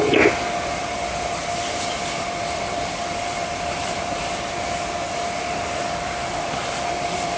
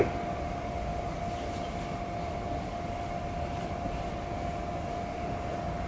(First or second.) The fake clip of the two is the first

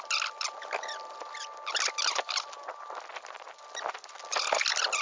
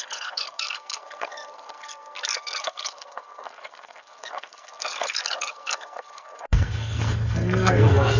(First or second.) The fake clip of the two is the second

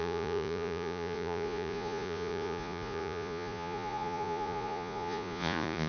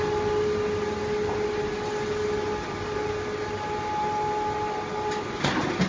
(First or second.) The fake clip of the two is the first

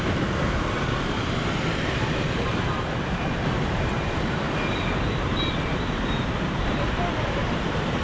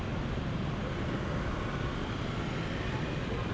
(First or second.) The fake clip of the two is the first